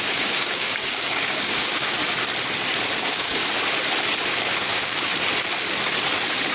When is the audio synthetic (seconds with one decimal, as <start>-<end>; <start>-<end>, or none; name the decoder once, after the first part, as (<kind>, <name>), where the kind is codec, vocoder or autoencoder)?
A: 0.0-2.0 (codec, DAC); 3.0-3.4; 4.3-5.1